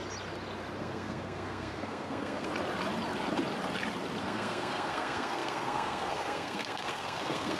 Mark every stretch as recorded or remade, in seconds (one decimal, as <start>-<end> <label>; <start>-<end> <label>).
0.0-0.8 recorded; 0.8-2.5 remade; 2.5-4.2 recorded; 4.2-7.6 remade